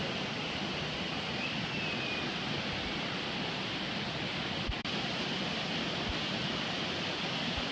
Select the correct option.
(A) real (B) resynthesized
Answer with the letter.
B